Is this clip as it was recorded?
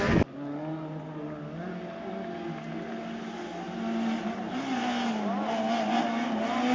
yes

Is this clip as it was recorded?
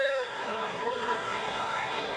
no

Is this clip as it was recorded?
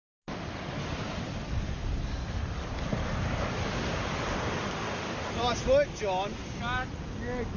yes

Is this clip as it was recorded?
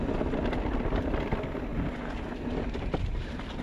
yes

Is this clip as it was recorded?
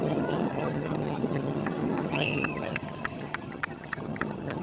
no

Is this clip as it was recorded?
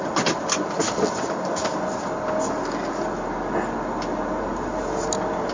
yes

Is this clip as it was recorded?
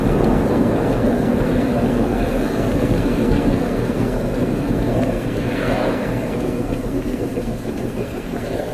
no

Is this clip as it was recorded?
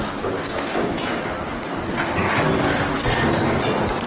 yes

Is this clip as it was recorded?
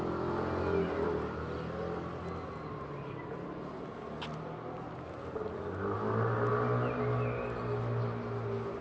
yes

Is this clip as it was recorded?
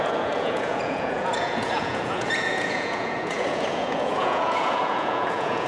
no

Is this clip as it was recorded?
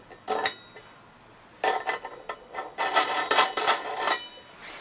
yes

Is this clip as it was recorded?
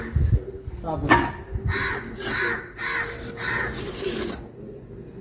yes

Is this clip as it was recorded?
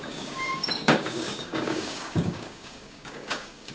no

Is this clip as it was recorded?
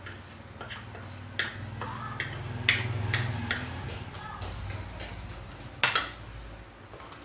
yes